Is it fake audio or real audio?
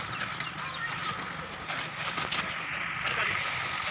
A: real